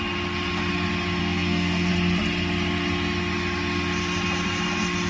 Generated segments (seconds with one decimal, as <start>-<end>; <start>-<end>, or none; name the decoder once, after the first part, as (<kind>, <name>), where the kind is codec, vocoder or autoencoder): 1.2-1.9 (codec, SNAC)

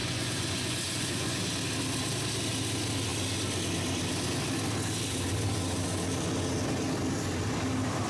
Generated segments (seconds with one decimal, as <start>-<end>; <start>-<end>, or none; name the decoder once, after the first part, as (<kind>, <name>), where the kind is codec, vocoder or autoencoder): 0.0-1.4 (vocoder, Vocos)

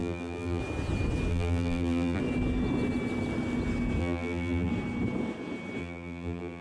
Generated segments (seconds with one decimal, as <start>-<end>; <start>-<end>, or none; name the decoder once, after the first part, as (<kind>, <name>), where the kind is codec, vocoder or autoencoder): 0.0-0.6 (vocoder, BigVGAN v2); 1.3-2.2; 4.0-4.7; 5.8-6.6

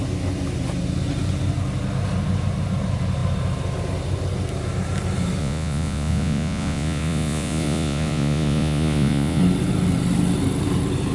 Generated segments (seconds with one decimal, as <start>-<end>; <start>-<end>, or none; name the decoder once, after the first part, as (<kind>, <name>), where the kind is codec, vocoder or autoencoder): 5.4-9.4 (vocoder, Vocos)

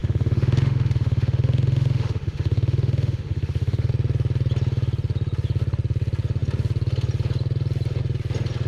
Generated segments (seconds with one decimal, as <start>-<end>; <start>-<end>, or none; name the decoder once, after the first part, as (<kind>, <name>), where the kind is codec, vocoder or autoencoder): 0.0-3.9 (autoencoder, DAC-VAE)

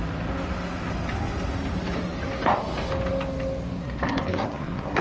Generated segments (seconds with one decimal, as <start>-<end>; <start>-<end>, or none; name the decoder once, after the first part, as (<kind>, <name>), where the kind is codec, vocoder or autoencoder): 3.8-5.0 (codec, SNAC)

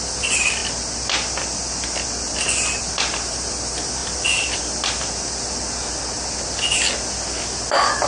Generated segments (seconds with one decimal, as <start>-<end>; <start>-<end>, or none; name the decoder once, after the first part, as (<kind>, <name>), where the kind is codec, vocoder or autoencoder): none